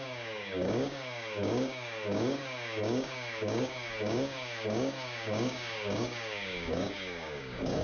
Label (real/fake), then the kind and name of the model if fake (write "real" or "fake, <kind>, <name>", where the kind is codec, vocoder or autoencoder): fake, codec, DAC